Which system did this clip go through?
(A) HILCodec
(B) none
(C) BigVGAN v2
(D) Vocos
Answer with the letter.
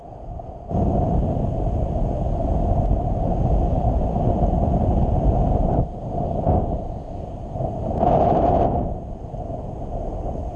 B